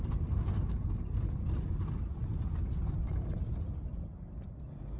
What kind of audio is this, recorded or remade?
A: recorded